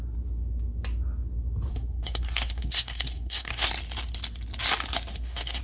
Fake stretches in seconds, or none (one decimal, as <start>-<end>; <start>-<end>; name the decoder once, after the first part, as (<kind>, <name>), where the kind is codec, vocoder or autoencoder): 1.7-3.7 (codec, SNAC); 5.1-5.6